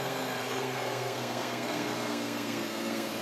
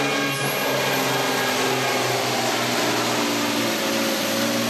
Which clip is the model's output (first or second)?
first